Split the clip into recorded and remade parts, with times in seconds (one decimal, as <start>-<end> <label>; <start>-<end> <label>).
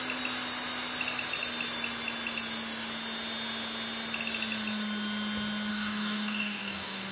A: 0.0-5.7 recorded; 5.7-7.1 remade